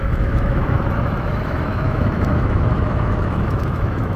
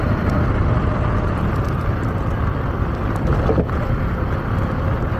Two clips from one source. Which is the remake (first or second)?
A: first